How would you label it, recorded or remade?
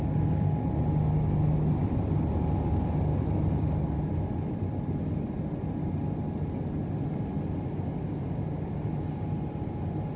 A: recorded